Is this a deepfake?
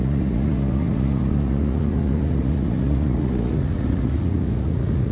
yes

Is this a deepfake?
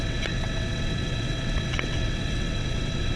yes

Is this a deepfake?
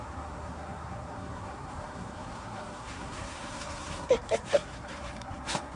yes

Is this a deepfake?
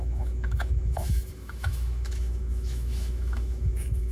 yes